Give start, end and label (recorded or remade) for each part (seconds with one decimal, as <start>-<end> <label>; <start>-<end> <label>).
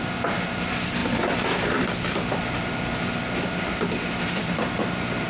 0.0-5.3 recorded